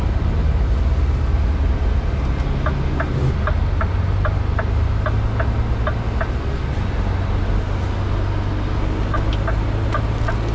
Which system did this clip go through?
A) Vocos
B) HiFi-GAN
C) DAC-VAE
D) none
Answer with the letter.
D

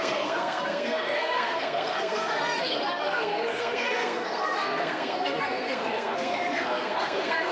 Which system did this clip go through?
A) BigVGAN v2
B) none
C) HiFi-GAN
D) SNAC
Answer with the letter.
D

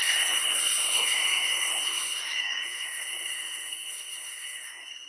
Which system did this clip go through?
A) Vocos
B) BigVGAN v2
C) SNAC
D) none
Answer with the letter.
C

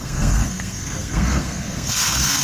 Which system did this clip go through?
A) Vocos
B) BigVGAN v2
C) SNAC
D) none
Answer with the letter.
C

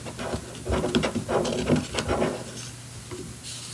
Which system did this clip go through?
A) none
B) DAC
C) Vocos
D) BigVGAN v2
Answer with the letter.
A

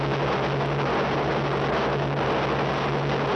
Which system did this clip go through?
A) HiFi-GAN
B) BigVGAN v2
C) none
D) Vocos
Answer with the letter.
C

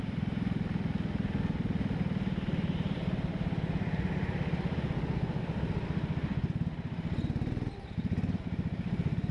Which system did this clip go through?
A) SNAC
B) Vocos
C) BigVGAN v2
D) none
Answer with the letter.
C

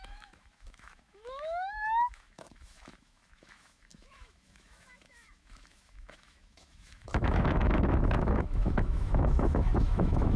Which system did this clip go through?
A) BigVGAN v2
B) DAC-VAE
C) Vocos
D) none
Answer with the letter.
B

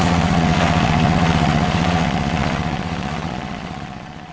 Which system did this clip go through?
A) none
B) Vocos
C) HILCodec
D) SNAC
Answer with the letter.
B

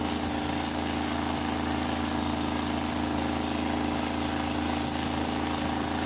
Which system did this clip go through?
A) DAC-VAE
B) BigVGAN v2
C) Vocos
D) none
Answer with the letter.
D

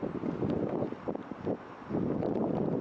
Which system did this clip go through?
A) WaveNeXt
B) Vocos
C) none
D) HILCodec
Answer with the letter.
C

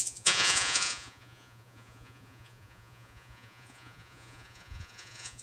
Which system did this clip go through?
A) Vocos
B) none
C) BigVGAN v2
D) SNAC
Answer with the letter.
A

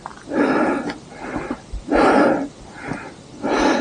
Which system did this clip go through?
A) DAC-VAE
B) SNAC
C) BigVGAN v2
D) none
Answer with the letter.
D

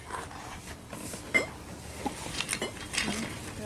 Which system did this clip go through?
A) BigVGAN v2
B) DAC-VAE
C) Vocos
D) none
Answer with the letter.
D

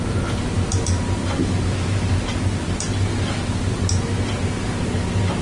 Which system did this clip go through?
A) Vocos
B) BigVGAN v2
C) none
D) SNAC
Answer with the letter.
C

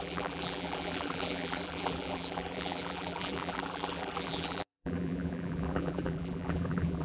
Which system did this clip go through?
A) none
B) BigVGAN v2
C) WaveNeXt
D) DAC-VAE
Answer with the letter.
B